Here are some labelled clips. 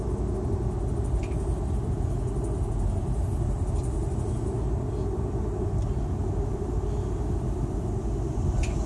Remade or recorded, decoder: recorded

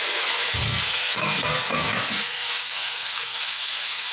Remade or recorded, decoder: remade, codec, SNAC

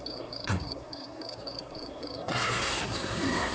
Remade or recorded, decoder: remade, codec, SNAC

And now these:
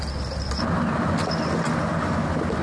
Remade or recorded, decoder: recorded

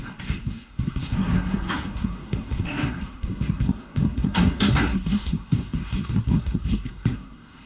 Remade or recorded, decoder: remade, codec, SNAC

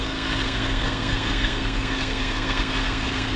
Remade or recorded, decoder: remade, codec, SNAC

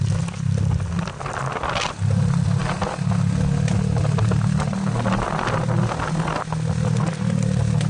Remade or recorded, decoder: recorded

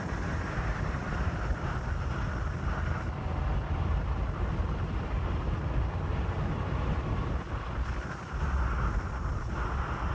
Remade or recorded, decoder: recorded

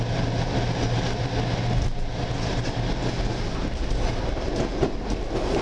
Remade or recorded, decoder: recorded